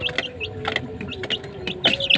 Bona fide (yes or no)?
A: yes